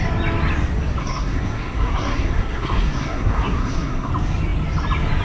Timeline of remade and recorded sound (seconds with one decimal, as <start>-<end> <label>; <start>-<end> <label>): 0.0-1.0 recorded; 1.0-4.1 remade; 4.1-5.2 recorded

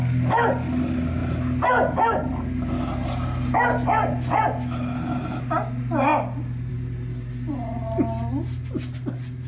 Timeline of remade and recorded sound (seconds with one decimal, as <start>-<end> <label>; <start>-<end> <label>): 0.0-9.5 recorded

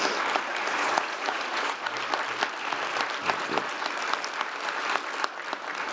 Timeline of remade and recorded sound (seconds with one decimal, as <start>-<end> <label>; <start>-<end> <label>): 0.0-0.5 recorded; 0.5-1.9 remade; 1.9-5.9 recorded

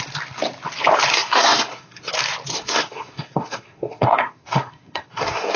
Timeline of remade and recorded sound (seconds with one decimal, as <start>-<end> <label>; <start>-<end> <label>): 0.0-1.1 recorded; 1.1-2.1 remade; 2.1-2.5 recorded; 2.5-5.6 remade